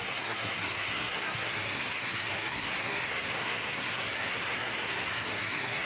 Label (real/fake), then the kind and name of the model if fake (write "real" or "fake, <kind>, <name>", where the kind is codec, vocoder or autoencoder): fake, codec, SNAC